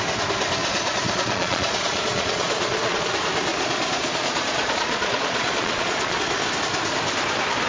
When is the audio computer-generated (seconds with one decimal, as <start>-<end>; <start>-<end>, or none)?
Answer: 0.6-3.1; 3.5-6.2